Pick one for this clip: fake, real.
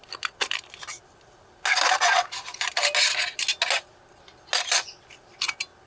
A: real